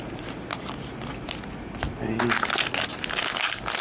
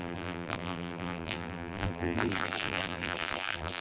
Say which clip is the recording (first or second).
first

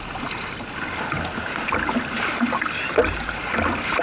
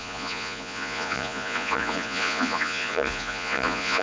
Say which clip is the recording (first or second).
first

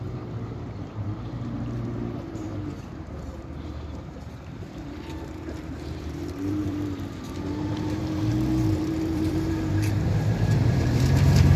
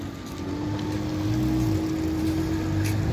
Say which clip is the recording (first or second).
second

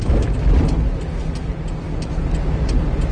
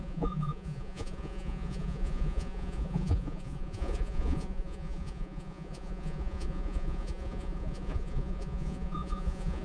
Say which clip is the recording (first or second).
first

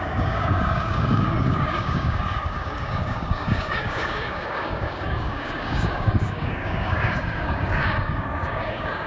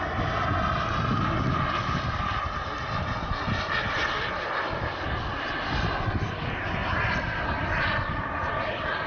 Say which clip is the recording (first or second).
second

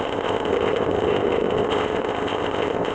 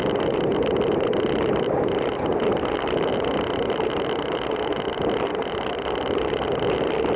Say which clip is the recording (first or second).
second